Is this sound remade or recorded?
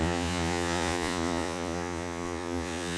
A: remade